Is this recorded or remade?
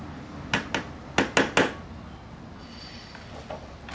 recorded